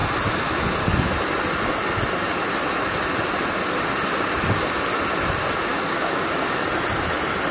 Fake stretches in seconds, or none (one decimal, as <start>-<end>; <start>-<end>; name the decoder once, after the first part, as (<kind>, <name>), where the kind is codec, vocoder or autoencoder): 5.7-6.6 (codec, DAC)